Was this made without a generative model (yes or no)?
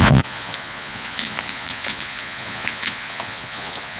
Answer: no